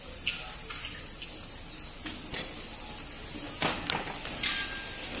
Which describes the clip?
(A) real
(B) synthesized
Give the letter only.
A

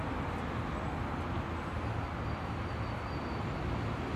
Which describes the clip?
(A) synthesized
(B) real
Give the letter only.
B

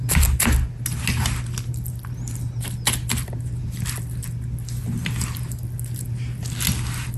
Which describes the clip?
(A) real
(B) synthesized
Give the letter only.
A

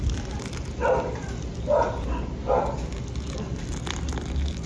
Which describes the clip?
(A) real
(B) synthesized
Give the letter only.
A